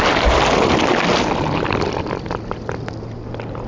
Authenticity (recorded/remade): recorded